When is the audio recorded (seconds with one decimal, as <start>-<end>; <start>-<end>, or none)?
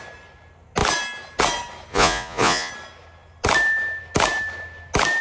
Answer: 0.0-1.9; 2.7-5.2